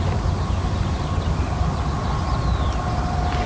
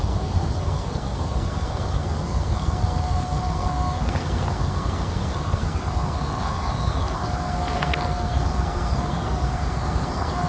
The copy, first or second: second